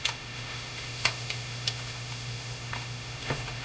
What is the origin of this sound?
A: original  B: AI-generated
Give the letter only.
B